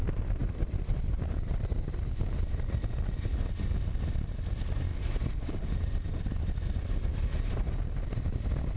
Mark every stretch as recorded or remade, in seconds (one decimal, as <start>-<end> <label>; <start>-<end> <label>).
0.0-0.4 recorded; 0.4-1.8 remade; 1.8-4.9 recorded; 4.9-6.1 remade; 6.1-7.1 recorded; 7.1-7.8 remade; 7.8-8.8 recorded